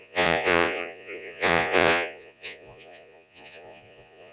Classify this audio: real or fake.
fake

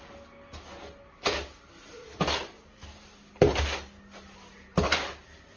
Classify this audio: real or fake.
real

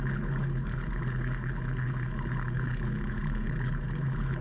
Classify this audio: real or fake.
fake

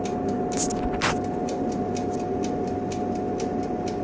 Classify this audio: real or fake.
real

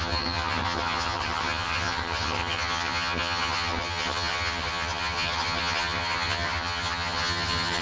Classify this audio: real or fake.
fake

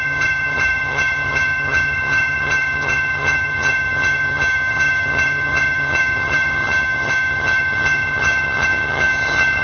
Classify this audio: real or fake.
fake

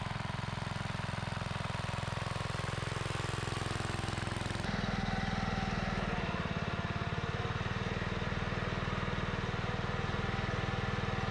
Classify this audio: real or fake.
real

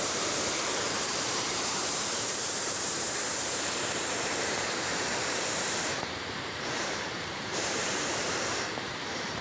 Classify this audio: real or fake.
fake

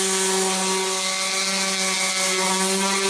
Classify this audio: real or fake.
real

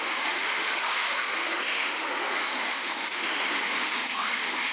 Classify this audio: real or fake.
fake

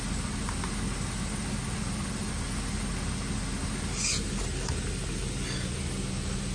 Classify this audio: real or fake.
real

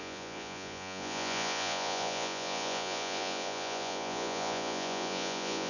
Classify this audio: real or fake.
fake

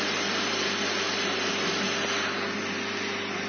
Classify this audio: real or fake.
real